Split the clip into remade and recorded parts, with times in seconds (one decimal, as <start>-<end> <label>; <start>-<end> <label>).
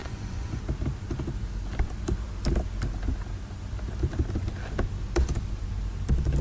0.0-0.6 remade; 0.6-6.4 recorded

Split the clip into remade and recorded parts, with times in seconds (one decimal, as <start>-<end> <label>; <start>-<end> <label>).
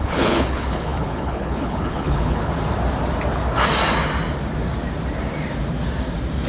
0.0-2.5 remade; 2.5-6.5 recorded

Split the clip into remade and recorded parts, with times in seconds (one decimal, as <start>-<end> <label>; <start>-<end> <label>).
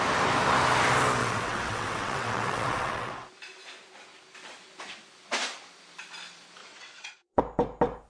0.0-1.2 recorded; 1.2-3.1 remade; 3.1-6.6 recorded; 6.6-7.4 remade; 7.4-8.1 recorded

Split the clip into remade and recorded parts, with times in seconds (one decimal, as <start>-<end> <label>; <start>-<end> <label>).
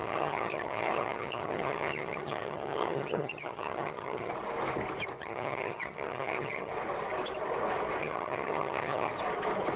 0.0-4.3 remade; 4.3-5.2 recorded; 5.2-6.7 remade; 6.7-8.0 recorded; 8.0-9.1 remade; 9.1-9.8 recorded